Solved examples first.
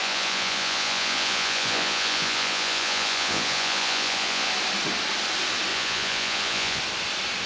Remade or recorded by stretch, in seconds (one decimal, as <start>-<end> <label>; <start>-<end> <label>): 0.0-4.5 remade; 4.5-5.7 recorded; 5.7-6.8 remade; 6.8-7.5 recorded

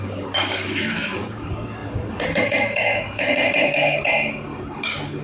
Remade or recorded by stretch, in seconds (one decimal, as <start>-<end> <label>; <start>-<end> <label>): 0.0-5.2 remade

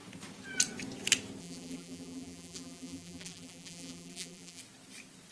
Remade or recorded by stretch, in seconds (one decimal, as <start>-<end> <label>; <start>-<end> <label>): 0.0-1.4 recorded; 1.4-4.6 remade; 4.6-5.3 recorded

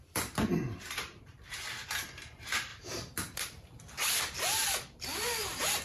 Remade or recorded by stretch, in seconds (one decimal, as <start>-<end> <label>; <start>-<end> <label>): 0.0-5.8 remade

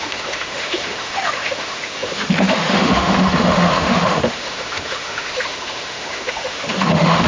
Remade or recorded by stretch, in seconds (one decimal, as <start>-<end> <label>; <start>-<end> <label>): 0.0-7.3 remade

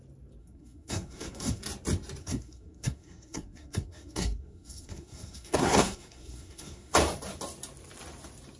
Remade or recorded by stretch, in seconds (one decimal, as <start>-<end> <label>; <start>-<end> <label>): 0.0-0.4 recorded; 0.4-1.6 remade; 1.6-2.2 recorded; 2.2-6.9 remade; 6.9-8.6 recorded